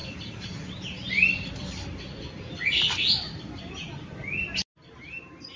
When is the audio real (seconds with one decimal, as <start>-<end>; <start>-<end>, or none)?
3.4-5.6